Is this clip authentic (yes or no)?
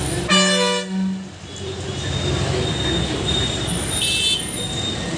yes